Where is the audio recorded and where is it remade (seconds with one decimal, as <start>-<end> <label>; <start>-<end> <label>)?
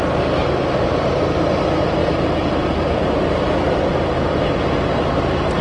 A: 0.0-0.4 recorded; 0.4-1.6 remade; 1.6-2.0 recorded; 2.0-5.6 remade